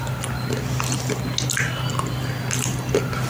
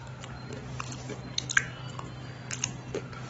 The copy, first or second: first